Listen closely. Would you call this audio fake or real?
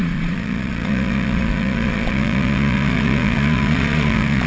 fake